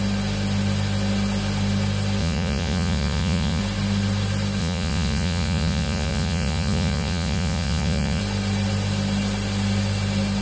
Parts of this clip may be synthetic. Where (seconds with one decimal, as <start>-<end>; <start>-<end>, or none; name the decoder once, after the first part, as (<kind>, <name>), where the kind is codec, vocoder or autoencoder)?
2.2-3.6 (vocoder, Vocos); 4.6-8.2